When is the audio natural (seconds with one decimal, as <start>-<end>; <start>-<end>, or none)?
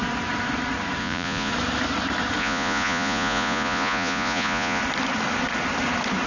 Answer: 0.0-1.0; 1.5-2.4; 4.8-6.3